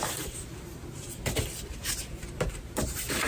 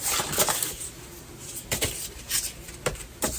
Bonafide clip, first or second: second